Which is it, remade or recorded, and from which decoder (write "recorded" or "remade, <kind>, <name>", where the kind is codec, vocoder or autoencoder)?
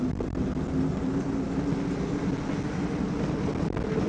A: recorded